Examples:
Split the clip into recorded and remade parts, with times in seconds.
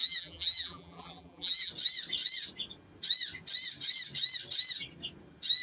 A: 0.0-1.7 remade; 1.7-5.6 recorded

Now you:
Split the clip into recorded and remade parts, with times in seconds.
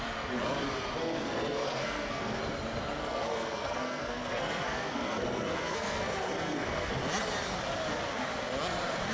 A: 0.0-1.0 recorded; 1.0-2.4 remade; 2.4-3.0 recorded; 3.0-6.9 remade; 6.9-9.1 recorded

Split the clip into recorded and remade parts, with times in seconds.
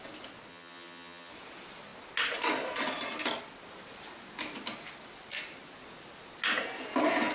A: 0.0-0.5 recorded; 0.5-1.3 remade; 1.3-7.3 recorded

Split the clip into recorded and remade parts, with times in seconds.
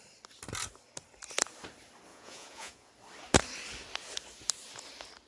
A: 0.0-2.1 recorded; 2.1-2.9 remade; 2.9-5.3 recorded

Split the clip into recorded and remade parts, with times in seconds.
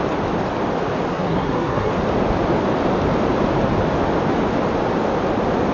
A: 0.0-1.1 recorded; 1.1-1.9 remade; 1.9-5.7 recorded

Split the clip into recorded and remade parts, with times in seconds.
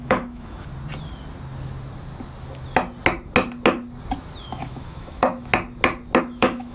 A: 0.0-0.7 remade; 0.7-4.4 recorded; 4.4-5.5 remade; 5.5-6.2 recorded; 6.2-6.7 remade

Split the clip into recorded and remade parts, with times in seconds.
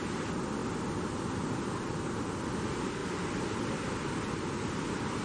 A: 0.0-0.6 recorded; 0.6-2.5 remade; 2.5-3.0 recorded; 3.0-4.0 remade; 4.0-5.2 recorded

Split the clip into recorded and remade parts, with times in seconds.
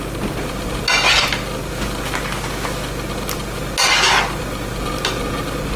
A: 0.0-5.8 recorded